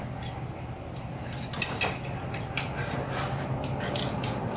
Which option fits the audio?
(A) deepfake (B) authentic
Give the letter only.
B